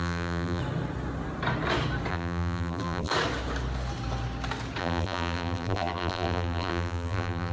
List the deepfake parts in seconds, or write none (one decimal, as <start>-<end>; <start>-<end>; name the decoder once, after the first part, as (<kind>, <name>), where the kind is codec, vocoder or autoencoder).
0.0-0.6 (vocoder, BigVGAN v2); 2.1-3.1; 4.8-7.5